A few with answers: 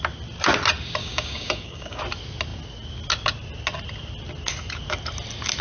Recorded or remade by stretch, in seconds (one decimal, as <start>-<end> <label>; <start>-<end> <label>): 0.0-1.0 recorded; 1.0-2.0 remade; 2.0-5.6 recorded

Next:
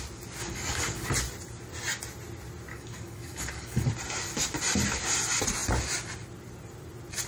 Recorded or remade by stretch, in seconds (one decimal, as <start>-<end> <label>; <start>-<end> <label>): 0.0-0.4 recorded; 0.4-1.1 remade; 1.1-2.7 recorded; 2.7-3.9 remade; 3.9-7.3 recorded

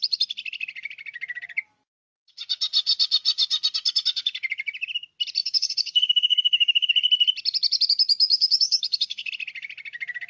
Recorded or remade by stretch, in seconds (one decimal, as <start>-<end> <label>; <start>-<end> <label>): 0.0-5.4 recorded; 5.4-6.9 remade; 6.9-8.3 recorded; 8.3-9.3 remade; 9.3-10.3 recorded